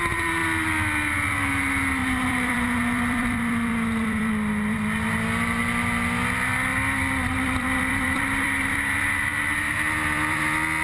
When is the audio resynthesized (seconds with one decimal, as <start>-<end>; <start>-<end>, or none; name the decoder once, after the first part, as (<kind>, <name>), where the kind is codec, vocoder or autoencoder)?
2.0-4.3 (vocoder, BigVGAN v2); 6.7-10.4